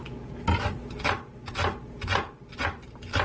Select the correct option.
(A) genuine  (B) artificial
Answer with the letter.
A